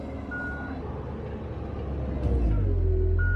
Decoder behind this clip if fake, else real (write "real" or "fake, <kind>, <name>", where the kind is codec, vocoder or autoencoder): real